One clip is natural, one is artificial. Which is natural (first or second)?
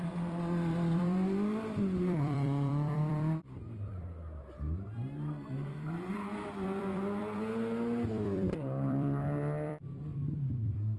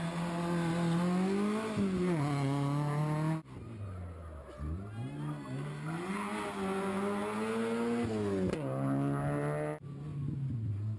second